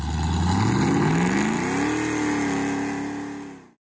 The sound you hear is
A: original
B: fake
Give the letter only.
A